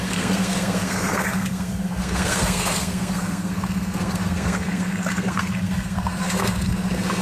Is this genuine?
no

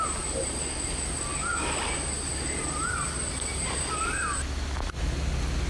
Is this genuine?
yes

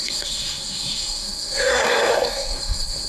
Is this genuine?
no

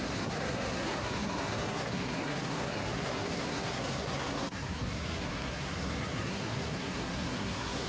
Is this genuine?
no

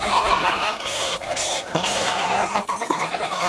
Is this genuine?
no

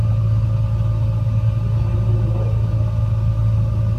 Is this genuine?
yes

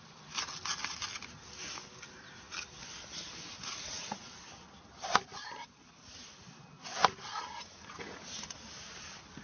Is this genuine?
yes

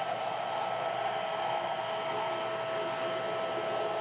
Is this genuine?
yes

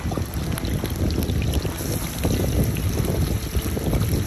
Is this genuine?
yes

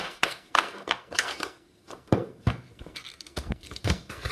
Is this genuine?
no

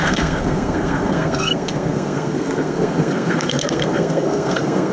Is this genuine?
no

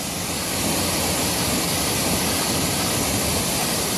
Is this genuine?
yes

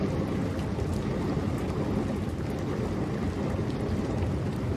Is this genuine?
yes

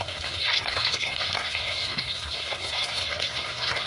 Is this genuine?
no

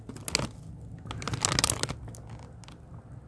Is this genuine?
yes